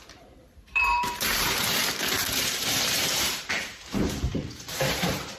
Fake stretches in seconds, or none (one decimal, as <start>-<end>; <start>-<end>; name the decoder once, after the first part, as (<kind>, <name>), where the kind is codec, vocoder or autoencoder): 0.0-5.4 (vocoder, BigVGAN v2)